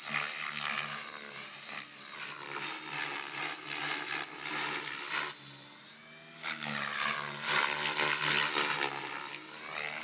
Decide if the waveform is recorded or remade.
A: recorded